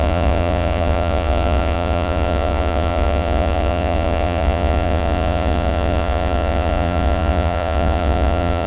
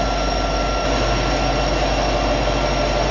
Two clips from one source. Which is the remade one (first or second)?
first